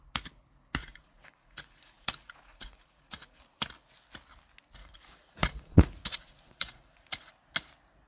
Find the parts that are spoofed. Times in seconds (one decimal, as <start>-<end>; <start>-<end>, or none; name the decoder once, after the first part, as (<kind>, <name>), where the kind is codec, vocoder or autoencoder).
0.8-3.4 (vocoder, Vocos); 4.8-7.3